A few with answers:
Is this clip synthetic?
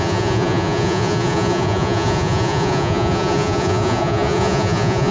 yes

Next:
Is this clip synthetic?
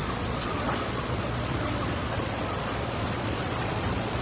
yes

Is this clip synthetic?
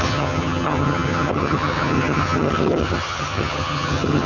yes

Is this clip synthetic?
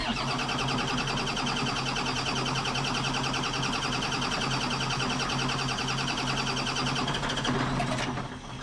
no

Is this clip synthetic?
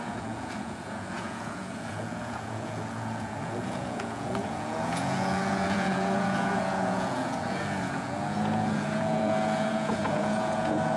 yes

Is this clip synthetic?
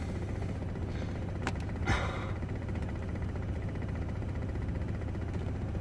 no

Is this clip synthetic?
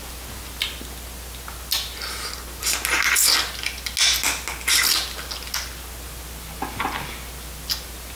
no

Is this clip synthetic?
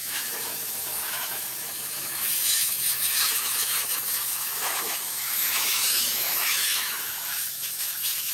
yes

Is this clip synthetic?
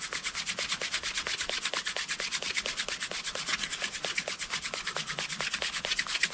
no